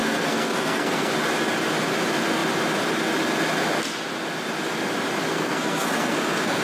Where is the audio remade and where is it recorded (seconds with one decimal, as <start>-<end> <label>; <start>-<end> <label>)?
0.0-1.1 remade; 1.1-5.3 recorded; 5.3-6.6 remade